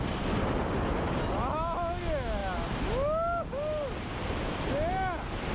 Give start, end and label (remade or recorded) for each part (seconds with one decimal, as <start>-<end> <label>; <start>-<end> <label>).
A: 0.0-5.5 recorded